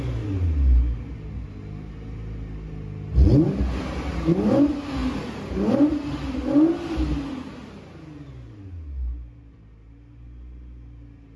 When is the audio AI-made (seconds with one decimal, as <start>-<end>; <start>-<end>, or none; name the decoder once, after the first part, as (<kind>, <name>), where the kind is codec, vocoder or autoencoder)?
none